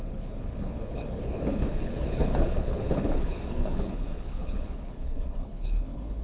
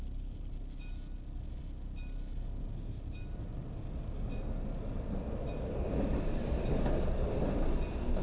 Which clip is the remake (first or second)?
first